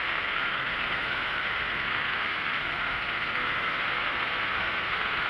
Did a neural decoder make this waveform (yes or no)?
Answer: yes